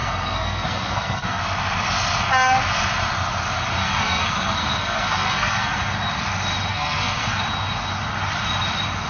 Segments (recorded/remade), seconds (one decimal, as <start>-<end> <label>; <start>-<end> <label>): 0.0-1.4 remade; 1.4-3.8 recorded; 3.8-5.9 remade; 5.9-6.7 recorded; 6.7-7.4 remade; 7.4-9.1 recorded